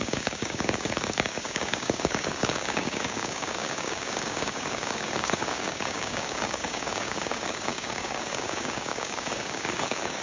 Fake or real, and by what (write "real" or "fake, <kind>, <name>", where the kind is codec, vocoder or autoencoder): fake, codec, DAC